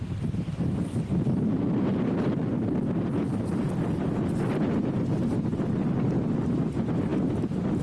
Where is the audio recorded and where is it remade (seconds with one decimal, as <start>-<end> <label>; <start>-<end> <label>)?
0.0-7.8 recorded